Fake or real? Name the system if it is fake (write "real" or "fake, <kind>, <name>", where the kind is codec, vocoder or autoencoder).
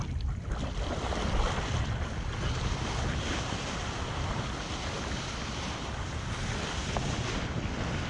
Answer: real